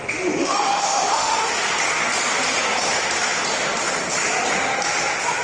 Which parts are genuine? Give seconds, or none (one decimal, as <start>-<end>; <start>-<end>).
0.0-0.4; 1.5-5.4